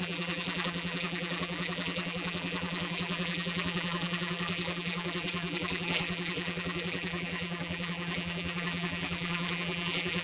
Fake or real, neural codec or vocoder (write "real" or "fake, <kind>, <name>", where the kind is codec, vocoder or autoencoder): fake, vocoder, BigVGAN v2